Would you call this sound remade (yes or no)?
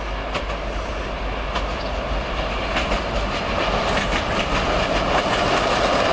no